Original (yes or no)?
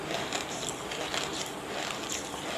yes